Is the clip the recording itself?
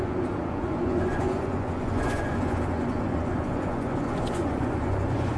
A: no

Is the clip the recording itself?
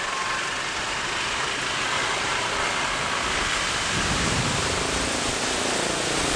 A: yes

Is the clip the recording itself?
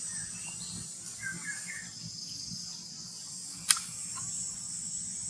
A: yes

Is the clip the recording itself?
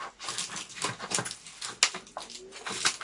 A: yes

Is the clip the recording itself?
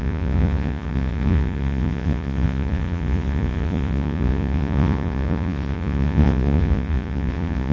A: no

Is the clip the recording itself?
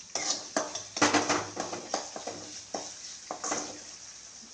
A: yes